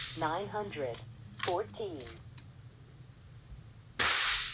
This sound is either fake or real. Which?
real